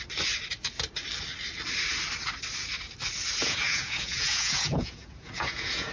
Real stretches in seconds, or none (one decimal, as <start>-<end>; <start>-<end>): 0.0-3.4